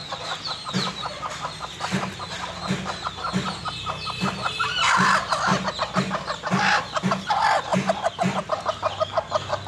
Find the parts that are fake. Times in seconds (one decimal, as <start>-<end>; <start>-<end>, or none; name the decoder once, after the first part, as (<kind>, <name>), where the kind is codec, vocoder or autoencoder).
4.2-5.5 (vocoder, BigVGAN v2); 6.3-9.7